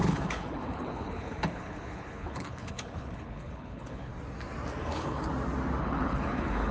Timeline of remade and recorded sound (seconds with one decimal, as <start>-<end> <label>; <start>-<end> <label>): 0.0-4.1 remade; 4.1-4.8 recorded; 4.8-5.3 remade; 5.3-5.8 recorded; 5.8-6.7 remade